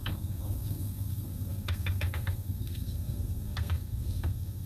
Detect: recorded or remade remade